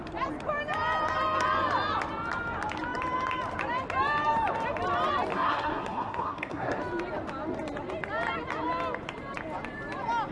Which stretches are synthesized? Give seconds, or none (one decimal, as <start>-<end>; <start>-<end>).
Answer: 5.3-6.8